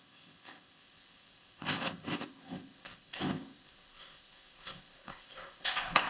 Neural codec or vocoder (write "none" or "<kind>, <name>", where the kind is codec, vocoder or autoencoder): codec, ZipCodec